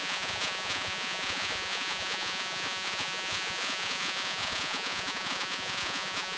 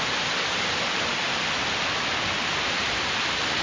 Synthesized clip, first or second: first